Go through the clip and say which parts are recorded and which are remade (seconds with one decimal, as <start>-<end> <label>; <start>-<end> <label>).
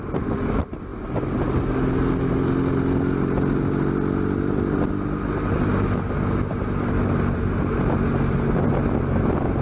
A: 0.0-9.6 recorded